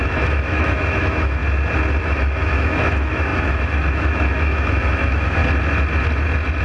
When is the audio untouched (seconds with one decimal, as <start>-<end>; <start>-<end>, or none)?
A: 1.4-2.0; 5.4-6.6